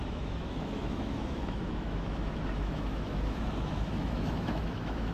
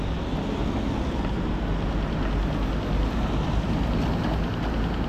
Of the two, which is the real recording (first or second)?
second